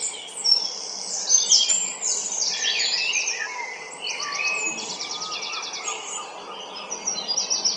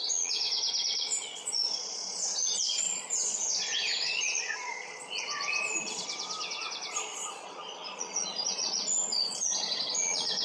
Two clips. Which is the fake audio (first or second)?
second